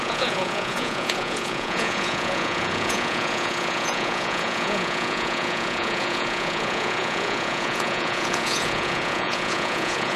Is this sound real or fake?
fake